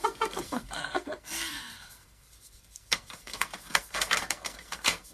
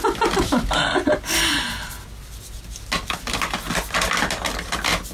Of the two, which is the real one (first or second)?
second